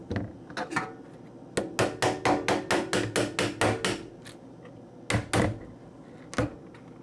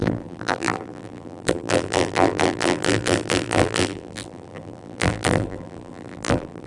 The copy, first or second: second